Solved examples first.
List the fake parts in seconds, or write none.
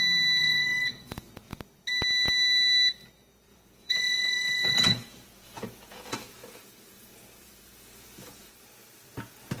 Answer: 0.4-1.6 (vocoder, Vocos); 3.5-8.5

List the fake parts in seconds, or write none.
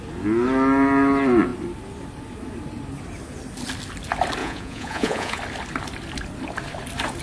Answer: 4.4-5.4 (vocoder, Vocos)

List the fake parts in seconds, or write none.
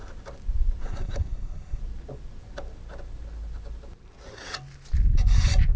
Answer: 0.8-1.8 (codec, SNAC)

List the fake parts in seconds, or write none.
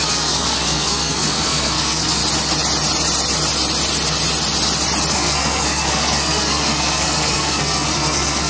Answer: 0.0-2.2 (codec, SNAC); 5.1-8.5